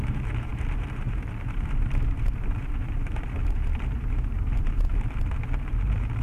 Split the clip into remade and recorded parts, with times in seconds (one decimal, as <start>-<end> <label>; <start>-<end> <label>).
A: 0.0-4.9 remade; 4.9-5.7 recorded; 5.7-6.2 remade